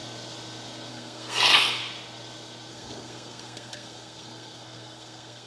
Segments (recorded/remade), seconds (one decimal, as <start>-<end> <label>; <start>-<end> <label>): 0.0-0.9 recorded; 0.9-1.8 remade; 1.8-2.7 recorded; 2.7-5.5 remade